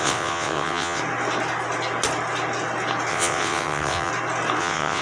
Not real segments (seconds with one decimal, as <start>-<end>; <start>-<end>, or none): 0.0-1.0; 3.1-4.1; 4.6-5.0